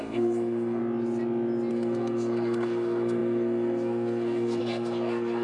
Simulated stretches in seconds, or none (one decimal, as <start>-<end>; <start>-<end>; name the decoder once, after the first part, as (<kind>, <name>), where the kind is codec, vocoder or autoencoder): 0.0-0.8 (codec, SNAC); 1.7-5.4